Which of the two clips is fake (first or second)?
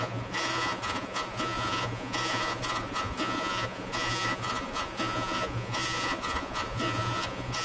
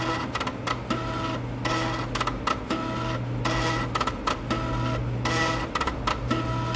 first